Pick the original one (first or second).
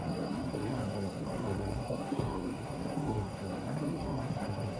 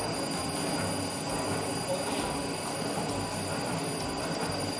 second